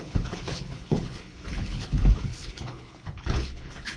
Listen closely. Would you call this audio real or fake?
fake